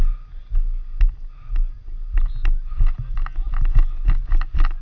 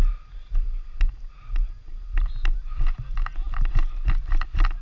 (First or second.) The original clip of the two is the first